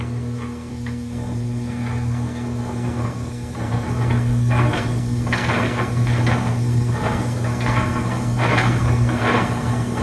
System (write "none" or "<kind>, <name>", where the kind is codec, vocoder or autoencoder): codec, SNAC